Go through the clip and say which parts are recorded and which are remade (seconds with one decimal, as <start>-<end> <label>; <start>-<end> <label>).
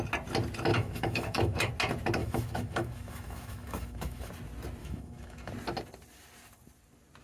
0.0-0.7 recorded; 0.7-1.7 remade; 1.7-2.2 recorded; 2.2-4.3 remade; 4.3-4.8 recorded; 4.8-5.5 remade; 5.5-7.2 recorded